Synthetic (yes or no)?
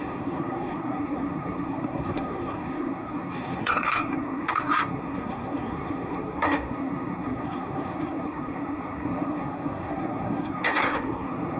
yes